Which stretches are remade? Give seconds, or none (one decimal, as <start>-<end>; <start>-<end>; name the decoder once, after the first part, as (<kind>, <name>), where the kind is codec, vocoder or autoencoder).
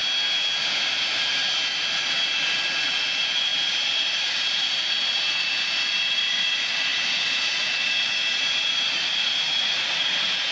0.6-1.4 (vocoder, Vocos); 1.9-10.5